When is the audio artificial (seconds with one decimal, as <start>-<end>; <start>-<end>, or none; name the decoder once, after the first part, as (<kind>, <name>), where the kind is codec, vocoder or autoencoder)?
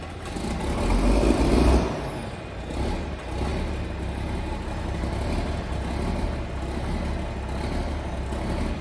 none